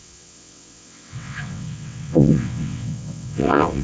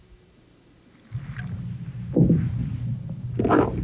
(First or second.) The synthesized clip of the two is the first